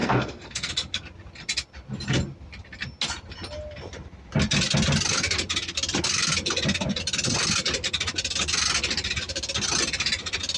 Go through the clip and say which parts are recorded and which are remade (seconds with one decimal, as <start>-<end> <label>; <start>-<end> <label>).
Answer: 0.0-0.7 remade; 0.7-10.6 recorded